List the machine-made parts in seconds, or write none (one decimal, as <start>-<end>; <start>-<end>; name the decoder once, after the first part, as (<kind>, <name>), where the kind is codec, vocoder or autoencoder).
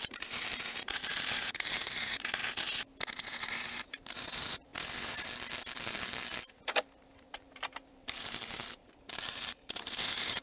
0.0-2.4 (vocoder, BigVGAN v2); 3.1-4.7; 6.6-10.4